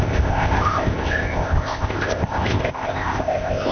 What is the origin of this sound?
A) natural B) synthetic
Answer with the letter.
B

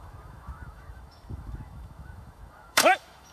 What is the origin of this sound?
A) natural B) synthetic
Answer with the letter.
B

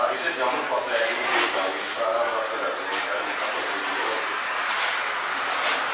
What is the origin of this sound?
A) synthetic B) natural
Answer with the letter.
B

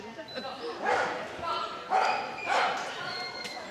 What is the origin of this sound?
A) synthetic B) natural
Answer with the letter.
B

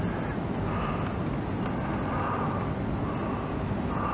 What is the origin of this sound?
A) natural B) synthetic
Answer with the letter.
A